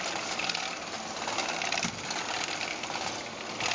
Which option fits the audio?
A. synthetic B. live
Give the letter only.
B